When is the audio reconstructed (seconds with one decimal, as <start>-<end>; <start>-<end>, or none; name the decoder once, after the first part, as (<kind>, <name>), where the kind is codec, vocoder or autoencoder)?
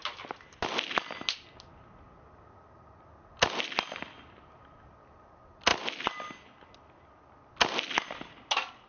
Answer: none